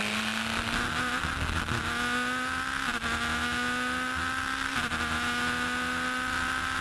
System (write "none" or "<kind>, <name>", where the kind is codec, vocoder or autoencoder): none